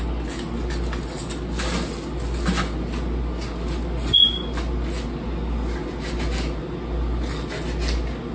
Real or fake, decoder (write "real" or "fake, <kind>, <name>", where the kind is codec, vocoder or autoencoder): real